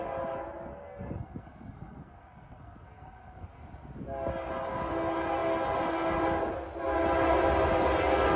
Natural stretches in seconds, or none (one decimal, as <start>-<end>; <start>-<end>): 0.0-0.7; 3.6-8.4